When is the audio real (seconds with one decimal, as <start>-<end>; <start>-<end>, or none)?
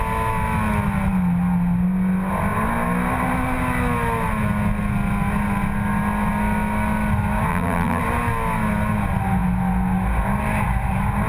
0.0-7.5; 8.0-11.3